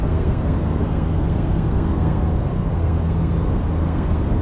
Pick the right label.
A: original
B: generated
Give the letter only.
B